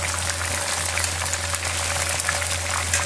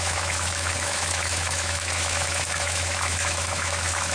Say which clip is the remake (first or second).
second